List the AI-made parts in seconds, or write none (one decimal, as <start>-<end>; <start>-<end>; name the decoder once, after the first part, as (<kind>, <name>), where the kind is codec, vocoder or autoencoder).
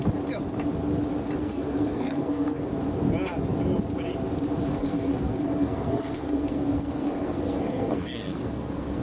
1.4-2.7 (codec, SNAC); 4.7-9.0